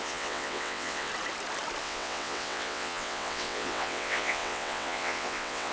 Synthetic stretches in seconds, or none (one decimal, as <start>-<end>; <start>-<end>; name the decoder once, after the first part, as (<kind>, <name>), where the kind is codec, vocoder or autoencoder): 0.0-1.1 (vocoder, WaveNeXt); 1.8-5.7